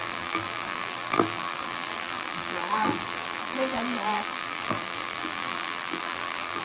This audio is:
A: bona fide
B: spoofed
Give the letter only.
B